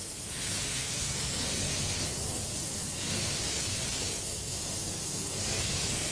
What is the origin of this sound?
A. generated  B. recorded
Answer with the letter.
A